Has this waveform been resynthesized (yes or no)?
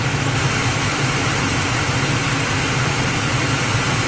no